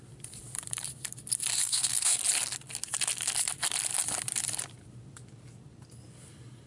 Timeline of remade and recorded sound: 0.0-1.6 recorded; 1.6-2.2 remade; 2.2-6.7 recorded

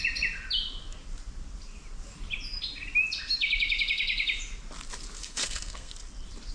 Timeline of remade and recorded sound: 0.0-5.2 recorded; 5.2-5.9 remade; 5.9-6.5 recorded

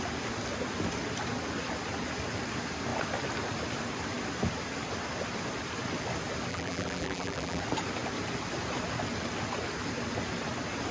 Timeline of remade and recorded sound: 0.0-6.5 recorded; 6.5-7.6 remade; 7.6-10.9 recorded

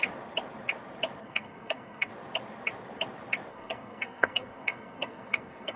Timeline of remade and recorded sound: 0.0-1.2 recorded; 1.2-2.1 remade; 2.1-3.5 recorded; 3.5-5.8 remade

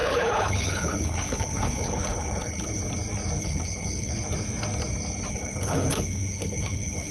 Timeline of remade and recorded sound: 0.0-2.8 remade; 2.8-3.4 recorded; 3.4-4.1 remade; 4.1-5.3 recorded; 5.3-7.1 remade